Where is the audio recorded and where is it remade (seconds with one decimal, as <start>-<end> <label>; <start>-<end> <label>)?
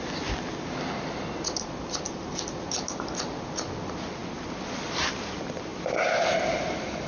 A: 0.0-7.1 recorded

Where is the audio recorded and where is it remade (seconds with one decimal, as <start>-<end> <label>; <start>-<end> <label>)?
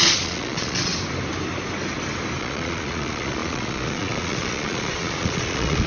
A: 0.0-0.9 remade; 0.9-2.4 recorded; 2.4-5.9 remade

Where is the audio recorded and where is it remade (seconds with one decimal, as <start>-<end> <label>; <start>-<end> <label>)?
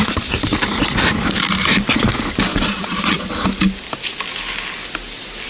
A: 0.0-2.5 recorded; 2.5-3.3 remade; 3.3-5.5 recorded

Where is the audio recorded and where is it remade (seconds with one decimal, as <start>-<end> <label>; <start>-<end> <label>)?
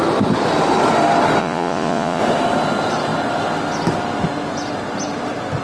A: 0.0-1.4 recorded; 1.4-2.2 remade; 2.2-5.6 recorded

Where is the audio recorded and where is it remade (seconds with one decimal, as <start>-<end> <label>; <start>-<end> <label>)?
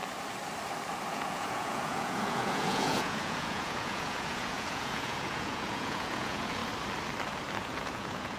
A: 0.0-1.1 recorded; 1.1-6.6 remade; 6.6-7.6 recorded; 7.6-8.4 remade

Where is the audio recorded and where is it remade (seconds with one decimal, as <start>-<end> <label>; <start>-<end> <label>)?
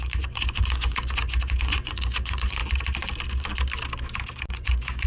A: 0.0-2.6 remade; 2.6-4.5 recorded; 4.5-5.1 remade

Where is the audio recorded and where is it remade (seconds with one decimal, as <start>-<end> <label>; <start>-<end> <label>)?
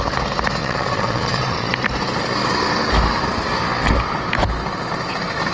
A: 0.0-0.6 recorded; 0.6-1.7 remade; 1.7-5.5 recorded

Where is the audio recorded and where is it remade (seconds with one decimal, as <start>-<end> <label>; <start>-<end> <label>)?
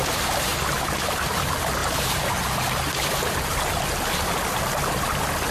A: 0.0-5.5 recorded